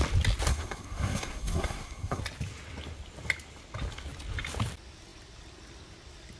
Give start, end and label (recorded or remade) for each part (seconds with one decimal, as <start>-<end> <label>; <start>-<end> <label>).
0.0-0.5 recorded; 0.5-2.2 remade; 2.2-6.4 recorded